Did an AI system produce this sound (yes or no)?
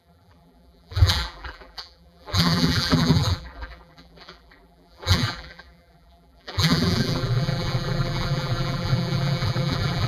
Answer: yes